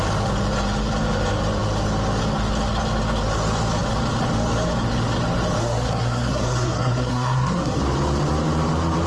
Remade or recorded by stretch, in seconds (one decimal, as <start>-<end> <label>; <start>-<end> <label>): 0.0-5.6 recorded; 5.6-7.8 remade; 7.8-9.1 recorded